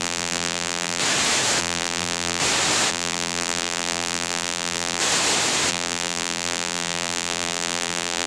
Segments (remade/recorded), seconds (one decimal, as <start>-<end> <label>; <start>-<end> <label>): 0.0-1.0 remade; 1.0-1.6 recorded; 1.6-2.4 remade; 2.4-2.9 recorded; 2.9-5.0 remade; 5.0-5.7 recorded; 5.7-8.3 remade